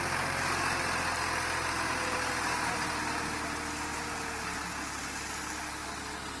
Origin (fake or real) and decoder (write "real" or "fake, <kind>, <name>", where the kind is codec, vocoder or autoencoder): real